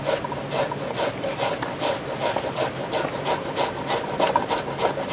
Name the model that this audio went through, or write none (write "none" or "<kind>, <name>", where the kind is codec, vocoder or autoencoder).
none